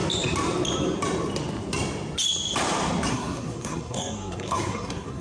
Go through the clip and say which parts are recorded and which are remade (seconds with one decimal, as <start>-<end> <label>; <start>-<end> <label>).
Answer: 0.0-3.1 recorded; 3.1-5.2 remade